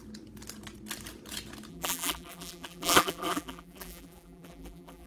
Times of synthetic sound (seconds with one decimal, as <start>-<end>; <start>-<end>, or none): 1.7-5.1